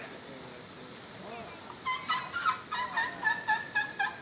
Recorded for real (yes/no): yes